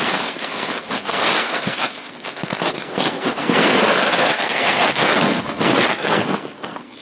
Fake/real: fake